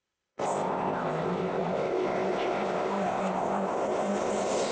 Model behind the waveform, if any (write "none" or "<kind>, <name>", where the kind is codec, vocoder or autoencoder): codec, ZipCodec